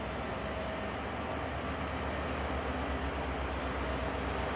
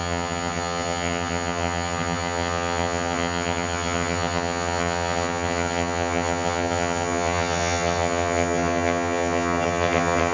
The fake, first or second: second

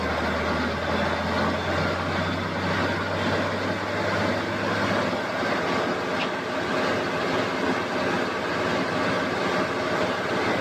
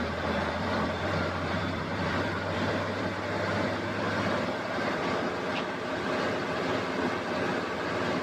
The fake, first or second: second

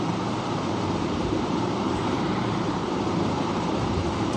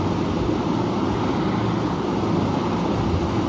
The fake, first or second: first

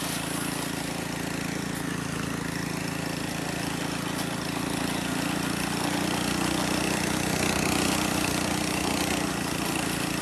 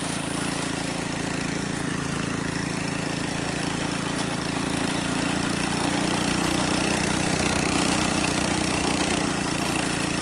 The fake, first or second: second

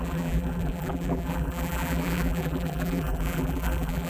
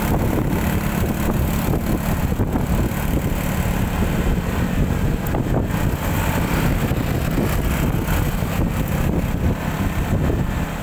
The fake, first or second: first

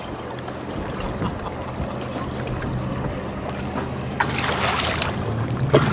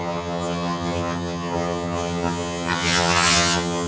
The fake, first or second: second